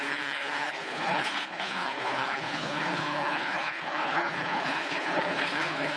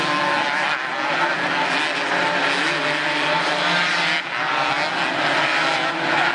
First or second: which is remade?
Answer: first